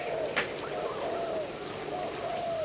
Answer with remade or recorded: recorded